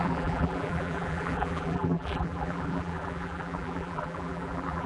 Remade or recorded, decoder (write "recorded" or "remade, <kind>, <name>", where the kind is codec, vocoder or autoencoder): remade, vocoder, BigVGAN v2